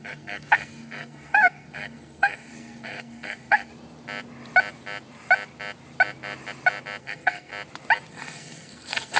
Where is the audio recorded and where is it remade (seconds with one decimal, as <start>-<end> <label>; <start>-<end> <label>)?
0.0-3.7 remade; 3.7-7.0 recorded; 7.0-7.5 remade; 7.5-8.1 recorded; 8.1-9.2 remade